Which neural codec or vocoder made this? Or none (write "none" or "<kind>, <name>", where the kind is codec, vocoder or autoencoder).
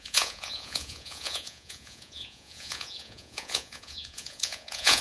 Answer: vocoder, Vocos